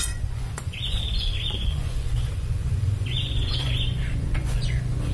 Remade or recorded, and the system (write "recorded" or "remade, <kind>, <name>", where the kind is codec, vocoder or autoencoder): remade, vocoder, Vocos